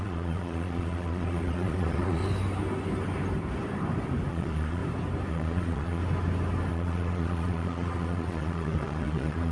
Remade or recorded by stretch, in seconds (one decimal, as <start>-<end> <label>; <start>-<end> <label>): 0.0-2.2 remade; 2.2-4.3 recorded; 4.3-4.8 remade; 4.8-5.3 recorded; 5.3-6.0 remade; 6.0-6.7 recorded; 6.7-9.5 remade